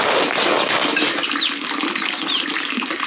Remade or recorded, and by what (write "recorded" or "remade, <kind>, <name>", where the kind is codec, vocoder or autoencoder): recorded